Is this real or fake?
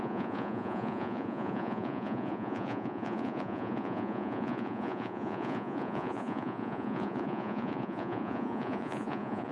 fake